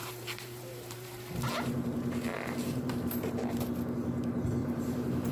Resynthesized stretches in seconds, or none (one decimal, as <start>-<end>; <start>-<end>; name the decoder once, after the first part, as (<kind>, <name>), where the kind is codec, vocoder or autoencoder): 0.0-1.2 (vocoder, BigVGAN v2); 2.3-3.6; 4.6-5.3